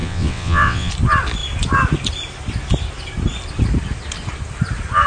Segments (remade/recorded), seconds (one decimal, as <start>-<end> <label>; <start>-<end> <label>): 0.0-0.9 remade; 0.9-5.1 recorded